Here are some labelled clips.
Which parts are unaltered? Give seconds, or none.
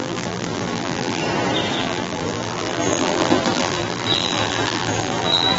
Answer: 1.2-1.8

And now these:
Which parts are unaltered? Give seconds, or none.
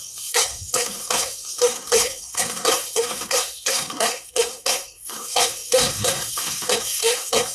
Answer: none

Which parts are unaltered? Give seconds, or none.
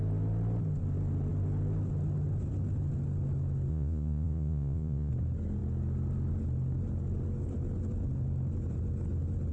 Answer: 0.0-3.7; 5.1-9.5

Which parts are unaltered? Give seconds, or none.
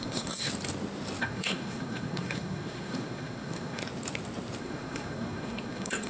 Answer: 0.5-1.2; 3.8-4.6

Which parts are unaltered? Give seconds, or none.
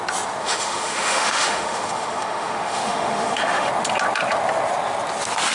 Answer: 0.0-0.4; 3.7-5.5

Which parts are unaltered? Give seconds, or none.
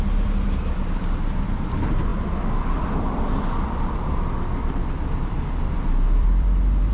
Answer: none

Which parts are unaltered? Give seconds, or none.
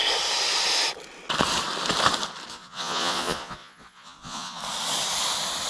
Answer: 0.0-2.5; 4.6-5.7